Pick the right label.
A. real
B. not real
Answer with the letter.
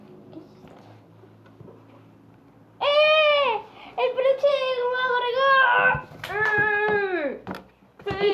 A